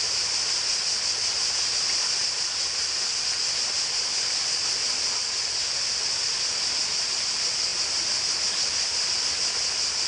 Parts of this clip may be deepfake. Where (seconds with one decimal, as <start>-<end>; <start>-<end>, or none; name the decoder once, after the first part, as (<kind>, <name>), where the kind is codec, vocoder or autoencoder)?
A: none

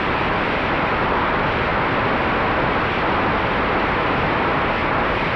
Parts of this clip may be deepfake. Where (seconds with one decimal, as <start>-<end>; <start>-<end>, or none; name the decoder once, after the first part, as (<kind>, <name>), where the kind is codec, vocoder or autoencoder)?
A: 0.0-1.7 (vocoder, BigVGAN v2); 4.9-5.4

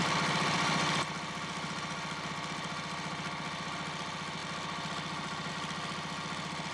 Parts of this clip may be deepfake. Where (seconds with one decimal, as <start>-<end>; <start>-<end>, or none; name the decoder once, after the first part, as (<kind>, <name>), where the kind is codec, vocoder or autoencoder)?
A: 0.0-2.3 (vocoder, BigVGAN v2); 4.4-5.5

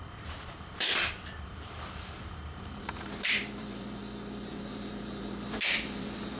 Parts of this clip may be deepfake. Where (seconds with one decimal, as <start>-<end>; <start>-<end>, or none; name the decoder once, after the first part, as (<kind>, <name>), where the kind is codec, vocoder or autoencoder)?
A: 0.0-4.0 (vocoder, BigVGAN v2); 4.5-6.4

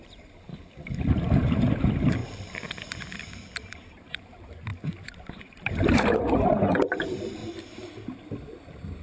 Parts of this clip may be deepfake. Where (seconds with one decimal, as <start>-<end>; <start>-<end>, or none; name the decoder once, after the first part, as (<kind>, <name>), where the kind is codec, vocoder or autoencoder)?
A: 0.0-0.5 (vocoder, BigVGAN v2); 1.4-2.2; 3.8-4.7; 5.3-7.4; 8.1-9.0

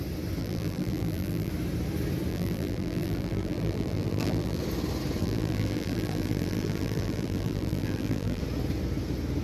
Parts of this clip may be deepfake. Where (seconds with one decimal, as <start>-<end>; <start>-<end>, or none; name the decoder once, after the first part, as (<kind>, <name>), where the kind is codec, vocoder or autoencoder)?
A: 0.4-1.5 (vocoder, BigVGAN v2); 2.3-4.6; 5.2-8.4